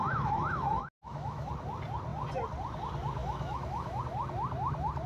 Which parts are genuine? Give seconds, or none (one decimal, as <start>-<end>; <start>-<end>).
1.5-3.2; 4.0-5.1